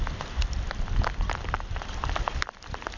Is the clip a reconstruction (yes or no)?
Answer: yes